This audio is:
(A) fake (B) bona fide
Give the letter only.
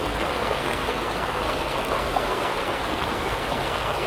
A